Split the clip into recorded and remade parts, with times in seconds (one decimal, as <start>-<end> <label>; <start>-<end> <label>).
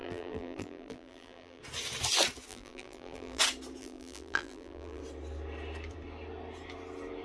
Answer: 0.0-1.6 remade; 1.6-2.5 recorded; 2.5-3.4 remade; 3.4-3.8 recorded; 3.8-5.0 remade; 5.0-7.2 recorded